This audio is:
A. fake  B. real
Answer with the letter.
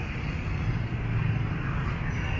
B